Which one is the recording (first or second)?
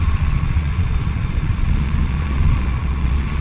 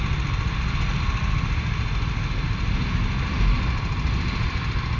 second